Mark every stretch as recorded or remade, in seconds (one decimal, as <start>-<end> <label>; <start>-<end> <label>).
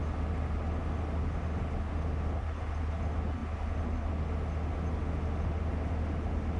0.0-6.6 recorded